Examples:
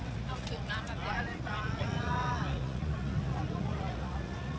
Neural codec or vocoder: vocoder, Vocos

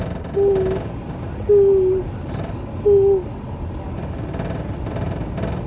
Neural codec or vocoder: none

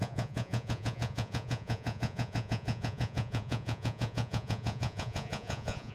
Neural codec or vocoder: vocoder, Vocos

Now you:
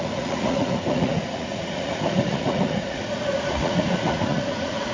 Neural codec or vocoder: vocoder, Vocos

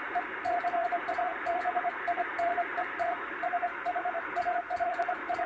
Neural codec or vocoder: vocoder, Vocos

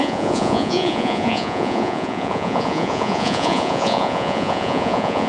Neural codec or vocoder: vocoder, Vocos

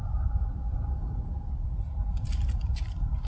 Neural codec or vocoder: none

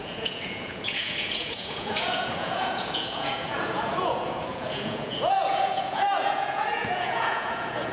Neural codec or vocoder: vocoder, Vocos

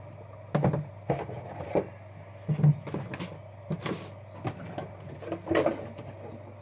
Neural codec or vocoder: none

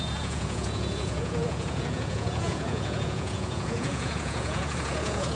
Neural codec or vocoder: vocoder, Vocos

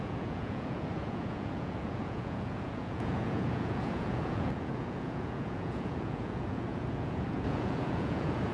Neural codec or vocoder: vocoder, Vocos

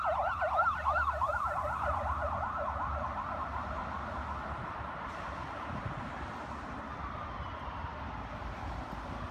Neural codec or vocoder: none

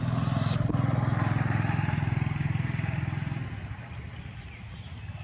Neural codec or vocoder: none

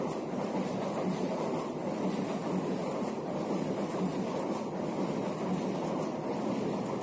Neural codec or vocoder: none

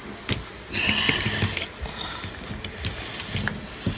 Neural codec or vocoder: none